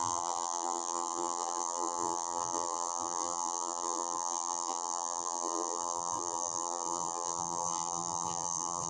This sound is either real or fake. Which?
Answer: fake